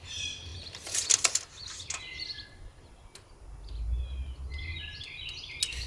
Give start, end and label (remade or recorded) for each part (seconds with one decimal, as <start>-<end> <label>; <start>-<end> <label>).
0.0-5.9 recorded